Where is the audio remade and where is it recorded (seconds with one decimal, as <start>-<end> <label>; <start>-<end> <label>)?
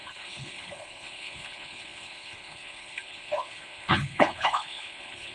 0.0-5.3 remade